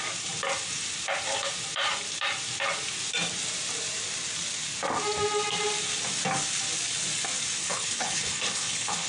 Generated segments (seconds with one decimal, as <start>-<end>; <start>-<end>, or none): 7.6-9.1